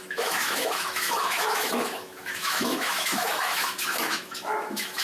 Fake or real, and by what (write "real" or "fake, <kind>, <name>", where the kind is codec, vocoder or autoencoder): fake, autoencoder, DAC-VAE